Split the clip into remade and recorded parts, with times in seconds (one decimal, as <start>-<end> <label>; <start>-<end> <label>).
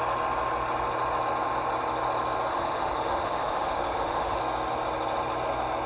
0.0-2.5 recorded; 2.5-4.4 remade; 4.4-5.9 recorded